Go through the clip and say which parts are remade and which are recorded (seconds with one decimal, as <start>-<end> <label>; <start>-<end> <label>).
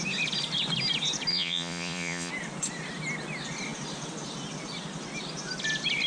0.0-1.3 recorded; 1.3-2.3 remade; 2.3-6.1 recorded